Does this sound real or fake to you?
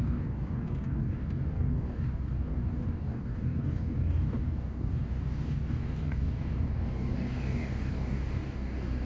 fake